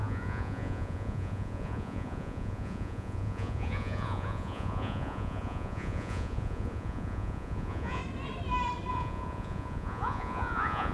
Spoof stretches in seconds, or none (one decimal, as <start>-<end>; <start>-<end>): 0.0-8.0; 8.9-10.9